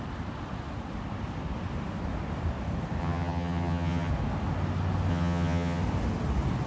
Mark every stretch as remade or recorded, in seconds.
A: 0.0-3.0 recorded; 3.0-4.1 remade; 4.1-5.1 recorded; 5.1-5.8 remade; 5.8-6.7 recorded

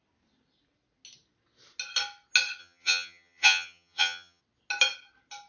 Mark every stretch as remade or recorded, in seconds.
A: 0.0-2.6 recorded; 2.6-4.4 remade; 4.4-5.5 recorded

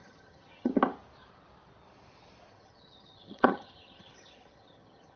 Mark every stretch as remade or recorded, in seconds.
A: 0.0-0.7 remade; 0.7-2.5 recorded; 2.5-5.2 remade

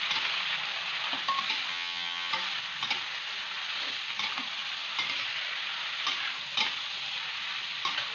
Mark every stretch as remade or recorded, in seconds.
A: 0.0-1.7 recorded; 1.7-2.3 remade; 2.3-8.1 recorded

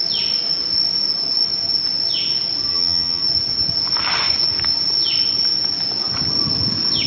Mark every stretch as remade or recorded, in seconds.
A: 0.0-2.7 recorded; 2.7-3.2 remade; 3.2-7.1 recorded